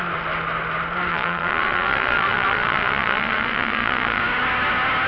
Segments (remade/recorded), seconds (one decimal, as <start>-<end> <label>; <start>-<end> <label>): 0.0-1.1 recorded; 1.1-4.2 remade; 4.2-5.1 recorded